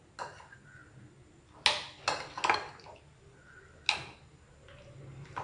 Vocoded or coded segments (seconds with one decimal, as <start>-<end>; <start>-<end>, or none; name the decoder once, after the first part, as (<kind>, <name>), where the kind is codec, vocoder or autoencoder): none